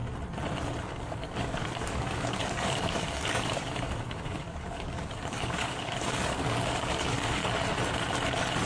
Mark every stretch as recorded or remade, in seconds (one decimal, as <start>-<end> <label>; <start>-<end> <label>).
0.0-0.8 recorded; 0.8-7.4 remade; 7.4-8.7 recorded